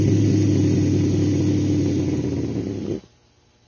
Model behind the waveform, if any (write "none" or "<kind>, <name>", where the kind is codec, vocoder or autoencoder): none